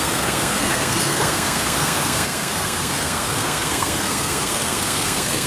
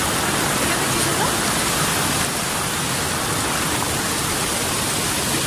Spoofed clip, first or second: first